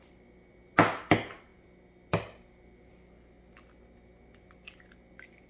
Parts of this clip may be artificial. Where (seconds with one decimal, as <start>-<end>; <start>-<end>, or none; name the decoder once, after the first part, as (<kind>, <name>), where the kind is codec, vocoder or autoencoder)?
none